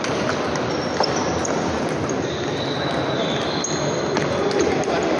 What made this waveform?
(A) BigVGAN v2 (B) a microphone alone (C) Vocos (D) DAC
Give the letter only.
B